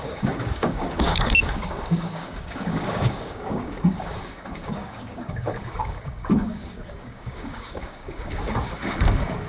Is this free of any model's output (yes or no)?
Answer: no